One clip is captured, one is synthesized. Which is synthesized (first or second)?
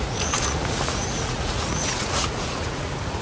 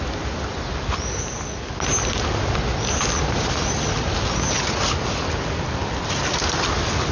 first